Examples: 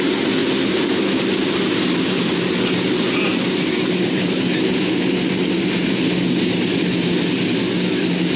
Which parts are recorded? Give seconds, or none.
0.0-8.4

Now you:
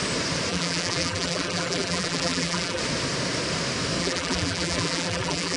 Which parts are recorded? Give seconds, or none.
0.0-0.5; 2.8-4.0